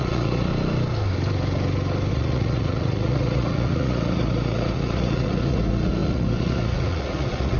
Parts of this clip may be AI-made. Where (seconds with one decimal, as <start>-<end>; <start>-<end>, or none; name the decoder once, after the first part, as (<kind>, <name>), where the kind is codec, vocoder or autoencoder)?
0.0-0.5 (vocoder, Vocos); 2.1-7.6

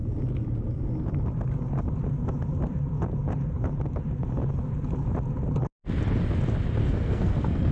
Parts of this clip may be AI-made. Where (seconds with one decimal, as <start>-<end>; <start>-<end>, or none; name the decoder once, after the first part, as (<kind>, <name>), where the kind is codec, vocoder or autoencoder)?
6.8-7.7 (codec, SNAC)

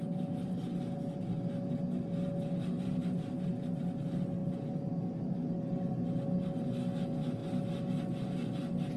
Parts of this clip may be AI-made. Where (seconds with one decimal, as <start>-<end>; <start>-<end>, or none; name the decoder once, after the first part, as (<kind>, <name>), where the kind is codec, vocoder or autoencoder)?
none

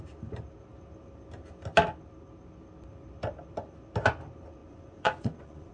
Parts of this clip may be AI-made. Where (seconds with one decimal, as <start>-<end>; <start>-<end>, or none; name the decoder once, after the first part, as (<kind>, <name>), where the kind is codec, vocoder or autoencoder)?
4.6-5.7 (vocoder, Vocos)

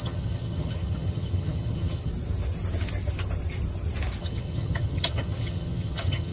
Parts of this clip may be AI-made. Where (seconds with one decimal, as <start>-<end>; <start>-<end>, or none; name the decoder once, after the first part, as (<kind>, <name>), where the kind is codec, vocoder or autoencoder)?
0.0-2.1 (vocoder, HiFi-GAN); 4.2-6.3

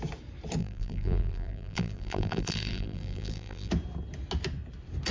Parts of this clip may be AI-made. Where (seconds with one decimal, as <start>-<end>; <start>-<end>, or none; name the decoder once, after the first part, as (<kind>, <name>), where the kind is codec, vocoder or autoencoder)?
0.6-3.7 (vocoder, BigVGAN v2)